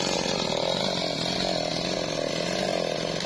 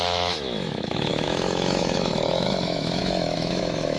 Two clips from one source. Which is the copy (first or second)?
second